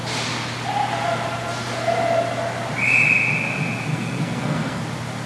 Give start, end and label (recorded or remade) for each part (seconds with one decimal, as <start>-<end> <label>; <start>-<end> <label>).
0.0-3.9 recorded; 3.9-4.8 remade; 4.8-5.3 recorded